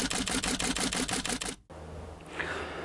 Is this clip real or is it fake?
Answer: real